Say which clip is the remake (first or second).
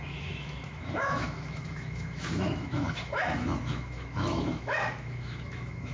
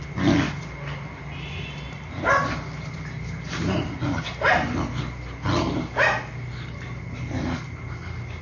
first